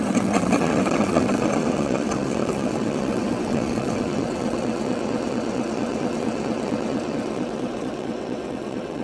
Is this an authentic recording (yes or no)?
no